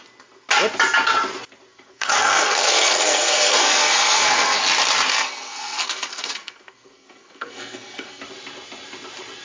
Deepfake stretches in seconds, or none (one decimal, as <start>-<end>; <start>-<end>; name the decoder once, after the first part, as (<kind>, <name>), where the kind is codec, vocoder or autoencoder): 1.7-4.6 (codec, SNAC); 5.1-8.2